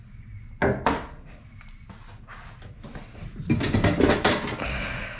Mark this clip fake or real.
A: real